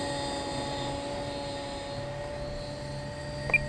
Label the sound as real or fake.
real